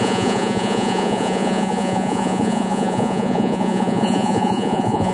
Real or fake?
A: fake